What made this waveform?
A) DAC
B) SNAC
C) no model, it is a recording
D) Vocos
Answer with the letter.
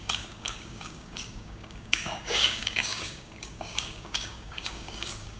A